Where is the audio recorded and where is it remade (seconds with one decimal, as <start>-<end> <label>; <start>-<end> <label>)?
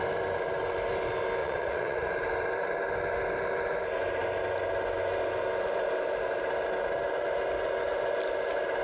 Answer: 0.0-1.4 recorded; 1.4-2.1 remade; 2.1-8.8 recorded